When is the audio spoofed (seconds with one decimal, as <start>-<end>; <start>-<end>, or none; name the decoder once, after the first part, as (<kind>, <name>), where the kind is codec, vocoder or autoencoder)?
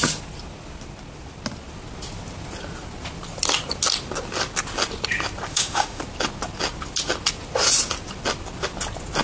5.5-6.0 (autoencoder, DAC-VAE)